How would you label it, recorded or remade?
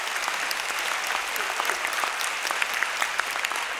recorded